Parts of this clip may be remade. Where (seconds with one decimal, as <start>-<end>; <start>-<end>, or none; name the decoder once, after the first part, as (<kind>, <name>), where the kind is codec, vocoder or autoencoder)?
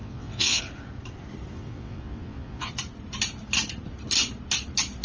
0.0-0.6 (vocoder, WaveNeXt); 1.5-2.7